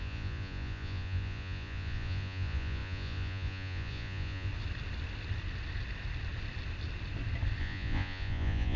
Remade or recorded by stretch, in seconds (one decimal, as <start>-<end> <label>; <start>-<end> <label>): 0.0-4.5 remade; 4.5-7.6 recorded; 7.6-8.8 remade